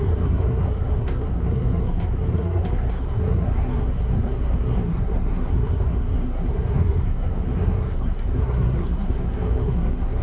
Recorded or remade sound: remade